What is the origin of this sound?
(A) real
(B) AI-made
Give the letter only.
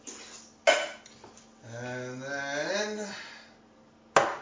A